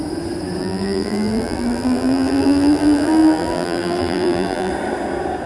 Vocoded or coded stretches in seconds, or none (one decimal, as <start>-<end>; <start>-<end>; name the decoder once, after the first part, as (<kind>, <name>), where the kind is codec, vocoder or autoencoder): 0.6-4.7 (vocoder, BigVGAN v2)

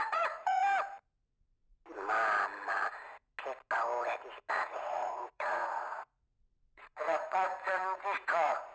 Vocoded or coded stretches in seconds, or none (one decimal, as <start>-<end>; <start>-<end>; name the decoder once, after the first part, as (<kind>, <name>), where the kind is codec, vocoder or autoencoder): 0.0-0.6 (vocoder, Vocos); 4.5-8.7

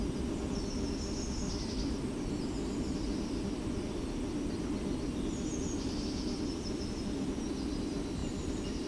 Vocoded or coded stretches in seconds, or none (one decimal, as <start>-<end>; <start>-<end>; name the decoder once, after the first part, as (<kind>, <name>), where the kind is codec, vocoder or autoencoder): none

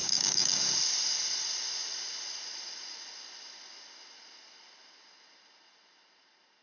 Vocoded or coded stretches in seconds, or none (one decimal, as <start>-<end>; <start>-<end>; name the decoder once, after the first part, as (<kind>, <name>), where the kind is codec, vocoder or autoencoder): 0.0-0.6 (codec, DAC)

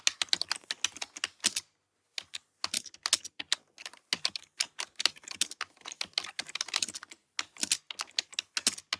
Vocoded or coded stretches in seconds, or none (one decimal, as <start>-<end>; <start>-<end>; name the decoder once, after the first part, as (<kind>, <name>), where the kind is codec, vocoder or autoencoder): none